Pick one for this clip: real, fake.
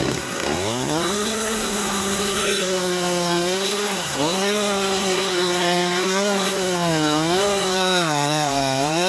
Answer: fake